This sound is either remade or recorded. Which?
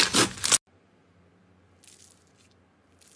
recorded